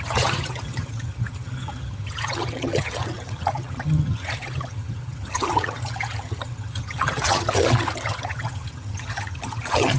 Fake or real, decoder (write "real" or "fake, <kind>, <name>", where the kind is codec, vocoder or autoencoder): fake, vocoder, HiFi-GAN